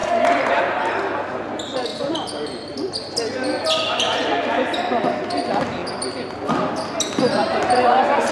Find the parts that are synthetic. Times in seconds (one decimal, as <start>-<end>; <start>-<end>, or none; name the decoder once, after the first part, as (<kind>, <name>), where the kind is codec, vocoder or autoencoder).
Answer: none